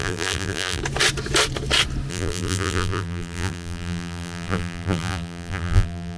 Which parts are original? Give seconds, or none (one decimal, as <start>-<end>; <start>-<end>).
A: 0.8-2.1